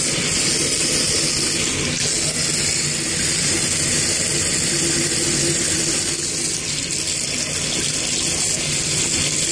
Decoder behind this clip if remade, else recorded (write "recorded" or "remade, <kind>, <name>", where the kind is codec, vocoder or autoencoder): recorded